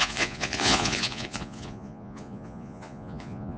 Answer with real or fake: fake